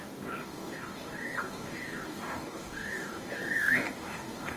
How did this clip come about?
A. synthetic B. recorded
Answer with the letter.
A